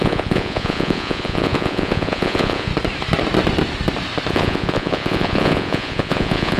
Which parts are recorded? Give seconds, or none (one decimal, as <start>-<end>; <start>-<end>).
2.7-4.3